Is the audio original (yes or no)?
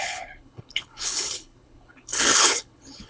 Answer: no